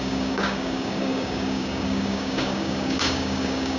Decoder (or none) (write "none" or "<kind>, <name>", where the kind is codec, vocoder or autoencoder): codec, DAC